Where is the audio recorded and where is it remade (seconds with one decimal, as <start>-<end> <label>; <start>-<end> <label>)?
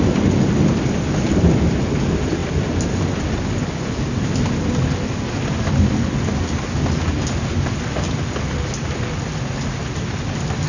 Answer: 0.0-10.7 recorded